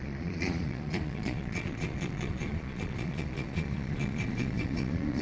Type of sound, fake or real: fake